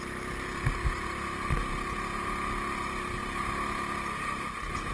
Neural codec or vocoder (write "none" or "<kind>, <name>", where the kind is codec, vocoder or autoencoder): none